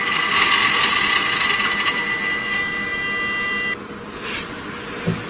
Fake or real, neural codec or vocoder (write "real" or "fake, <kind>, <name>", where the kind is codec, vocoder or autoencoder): real